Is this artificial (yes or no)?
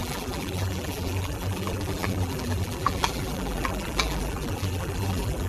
yes